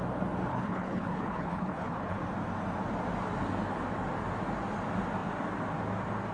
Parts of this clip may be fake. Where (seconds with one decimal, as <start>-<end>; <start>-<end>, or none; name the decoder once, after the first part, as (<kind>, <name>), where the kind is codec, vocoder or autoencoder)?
0.5-2.2 (codec, HILCodec)